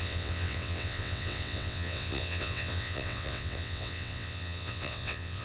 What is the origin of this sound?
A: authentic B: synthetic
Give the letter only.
B